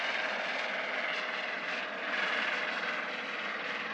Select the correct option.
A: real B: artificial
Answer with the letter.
A